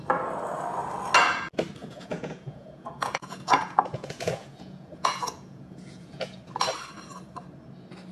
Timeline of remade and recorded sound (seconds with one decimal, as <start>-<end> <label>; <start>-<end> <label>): 0.0-1.8 recorded; 1.8-6.4 remade; 6.4-8.1 recorded